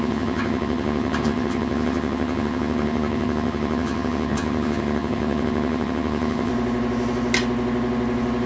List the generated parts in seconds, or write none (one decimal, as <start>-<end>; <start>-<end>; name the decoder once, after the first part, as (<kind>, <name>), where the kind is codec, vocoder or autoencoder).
0.0-6.5 (vocoder, HiFi-GAN)